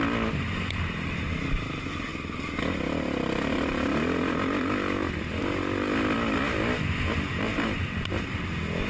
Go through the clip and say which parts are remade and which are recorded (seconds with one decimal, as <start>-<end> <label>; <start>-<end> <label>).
0.0-8.9 recorded